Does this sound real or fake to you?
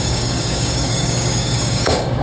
fake